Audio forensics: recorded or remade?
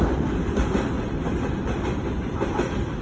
recorded